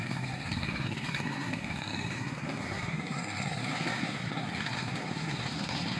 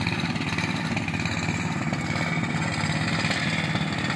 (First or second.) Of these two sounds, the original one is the second